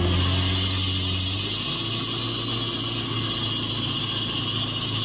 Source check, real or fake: real